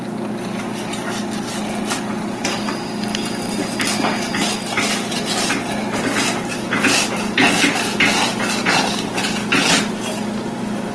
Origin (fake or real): real